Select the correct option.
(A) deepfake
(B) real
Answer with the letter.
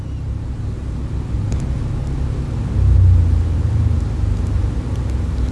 B